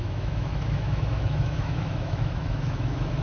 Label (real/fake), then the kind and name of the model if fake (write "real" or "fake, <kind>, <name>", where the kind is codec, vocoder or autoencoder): fake, autoencoder, DAC-VAE